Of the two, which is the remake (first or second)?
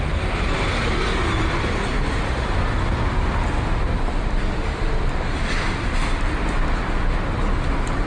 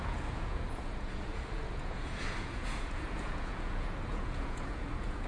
second